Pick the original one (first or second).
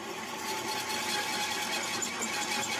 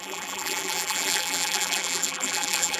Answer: first